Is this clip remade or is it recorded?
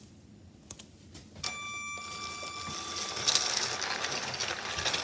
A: recorded